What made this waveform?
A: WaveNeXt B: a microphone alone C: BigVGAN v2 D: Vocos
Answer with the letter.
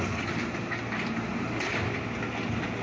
B